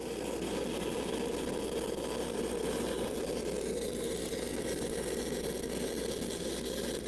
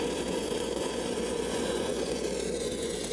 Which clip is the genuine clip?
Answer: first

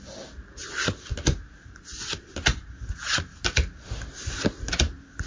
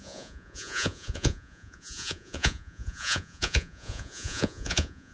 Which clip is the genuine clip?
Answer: first